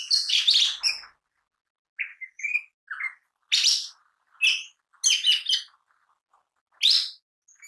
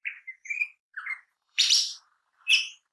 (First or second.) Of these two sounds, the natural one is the first